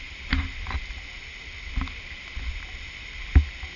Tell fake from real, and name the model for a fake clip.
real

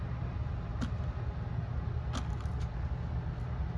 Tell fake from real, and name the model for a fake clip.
real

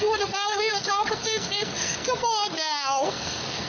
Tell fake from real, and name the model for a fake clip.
fake, codec, SNAC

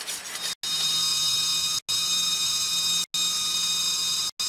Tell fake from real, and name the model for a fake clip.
real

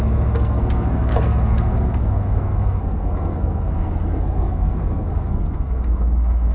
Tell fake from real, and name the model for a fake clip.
fake, codec, SNAC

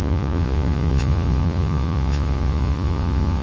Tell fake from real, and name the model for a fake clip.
fake, vocoder, Vocos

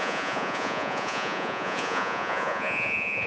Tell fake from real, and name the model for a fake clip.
fake, vocoder, Vocos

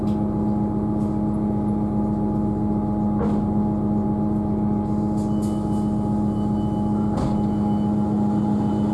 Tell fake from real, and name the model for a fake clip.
real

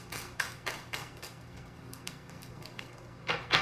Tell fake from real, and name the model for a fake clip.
fake, codec, SNAC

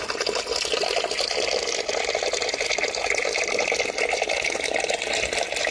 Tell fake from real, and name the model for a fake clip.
real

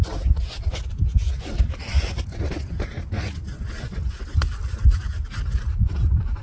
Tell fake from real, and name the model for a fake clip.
real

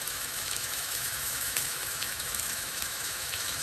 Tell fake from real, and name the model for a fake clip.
fake, autoencoder, DAC-VAE